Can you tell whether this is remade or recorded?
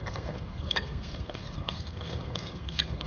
remade